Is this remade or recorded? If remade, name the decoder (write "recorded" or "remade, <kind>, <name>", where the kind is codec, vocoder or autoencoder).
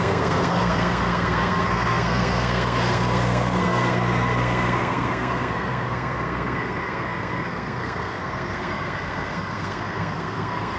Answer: remade, codec, SNAC